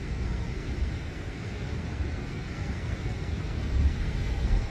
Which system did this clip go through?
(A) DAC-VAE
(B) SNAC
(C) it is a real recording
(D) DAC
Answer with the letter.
B